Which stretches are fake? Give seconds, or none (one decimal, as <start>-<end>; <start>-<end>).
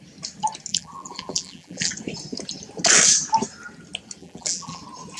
0.7-1.9; 4.2-4.8